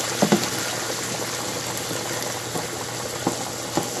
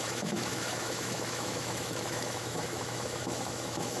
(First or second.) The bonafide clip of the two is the first